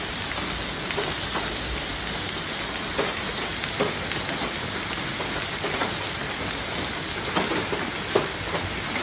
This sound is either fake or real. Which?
real